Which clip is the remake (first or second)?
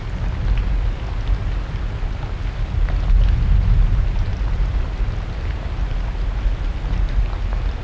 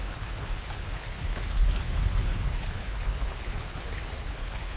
second